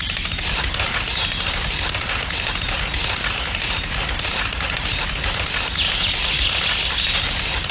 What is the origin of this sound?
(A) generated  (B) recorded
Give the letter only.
B